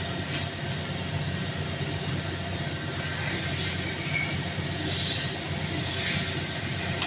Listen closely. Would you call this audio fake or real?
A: real